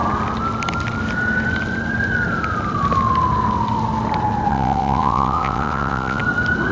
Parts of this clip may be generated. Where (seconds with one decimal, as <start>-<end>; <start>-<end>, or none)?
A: 4.5-6.2